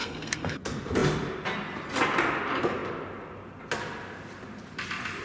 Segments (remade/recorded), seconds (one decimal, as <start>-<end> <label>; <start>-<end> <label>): 0.0-0.6 remade; 0.6-5.2 recorded